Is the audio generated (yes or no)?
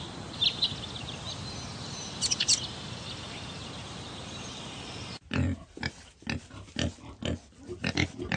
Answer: no